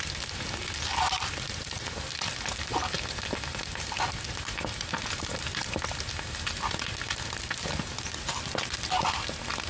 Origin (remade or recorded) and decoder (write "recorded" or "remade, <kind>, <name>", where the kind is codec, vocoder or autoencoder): recorded